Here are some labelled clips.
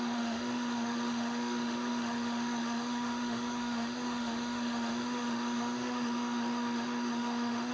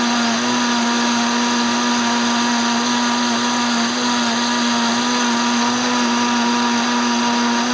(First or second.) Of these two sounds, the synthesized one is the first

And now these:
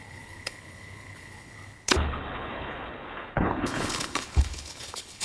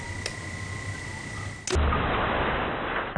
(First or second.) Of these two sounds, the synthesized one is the first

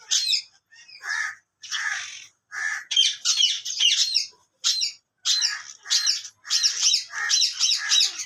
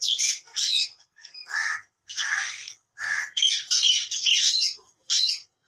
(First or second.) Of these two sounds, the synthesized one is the second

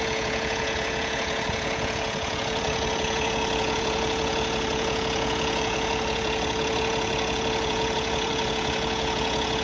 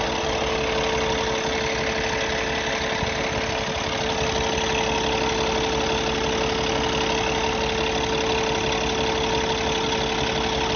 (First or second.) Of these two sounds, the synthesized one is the first